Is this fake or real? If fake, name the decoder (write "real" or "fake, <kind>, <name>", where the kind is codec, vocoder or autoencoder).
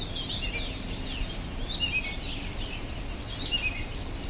real